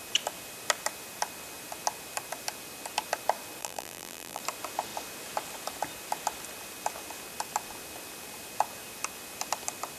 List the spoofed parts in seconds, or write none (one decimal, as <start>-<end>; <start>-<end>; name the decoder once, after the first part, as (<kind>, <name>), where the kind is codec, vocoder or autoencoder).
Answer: 3.6-4.4 (vocoder, BigVGAN v2)